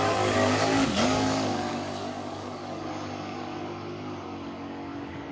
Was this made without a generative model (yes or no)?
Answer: no